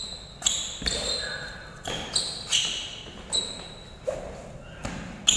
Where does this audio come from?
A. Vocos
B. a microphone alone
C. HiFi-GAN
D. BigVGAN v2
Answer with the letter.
B